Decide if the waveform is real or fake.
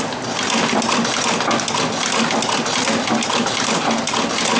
real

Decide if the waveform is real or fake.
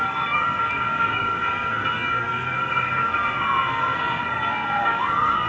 fake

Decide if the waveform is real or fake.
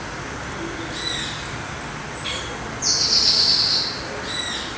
real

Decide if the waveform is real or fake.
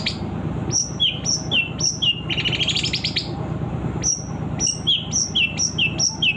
real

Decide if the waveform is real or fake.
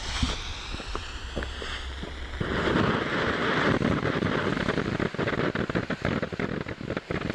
real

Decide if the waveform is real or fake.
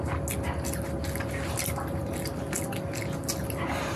real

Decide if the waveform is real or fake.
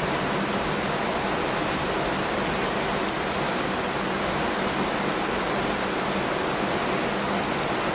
real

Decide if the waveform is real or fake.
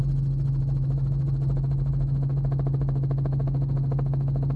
real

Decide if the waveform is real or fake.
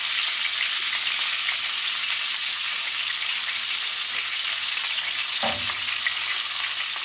real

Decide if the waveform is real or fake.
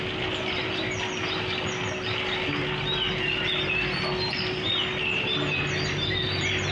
real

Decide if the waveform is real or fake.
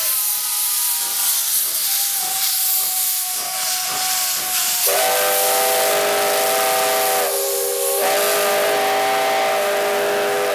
real